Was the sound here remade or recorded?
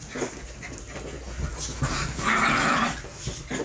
recorded